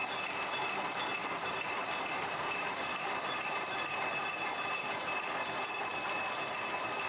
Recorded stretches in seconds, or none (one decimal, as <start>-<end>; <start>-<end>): 0.0-1.2; 4.1-7.1